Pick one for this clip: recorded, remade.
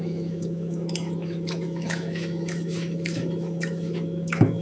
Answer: remade